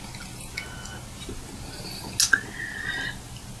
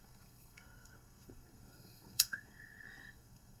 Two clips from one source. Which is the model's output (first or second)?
second